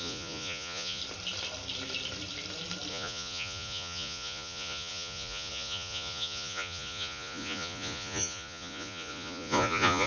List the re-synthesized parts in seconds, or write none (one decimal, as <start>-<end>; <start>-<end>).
0.0-1.0; 2.9-10.1